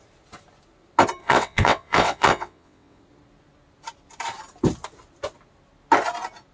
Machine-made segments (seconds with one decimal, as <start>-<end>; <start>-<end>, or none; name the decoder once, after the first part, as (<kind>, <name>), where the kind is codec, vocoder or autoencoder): 1.2-3.0 (vocoder, WaveNeXt)